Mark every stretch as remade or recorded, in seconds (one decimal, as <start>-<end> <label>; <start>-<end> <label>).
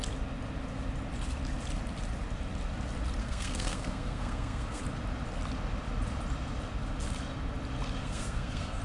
0.0-3.2 recorded; 3.2-4.8 remade; 4.8-8.0 recorded; 8.0-8.8 remade